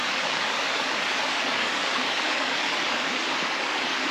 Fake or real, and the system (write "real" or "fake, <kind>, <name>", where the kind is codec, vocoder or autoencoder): fake, codec, DAC